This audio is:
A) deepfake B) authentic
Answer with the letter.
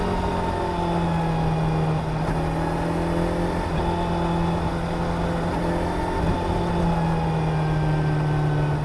B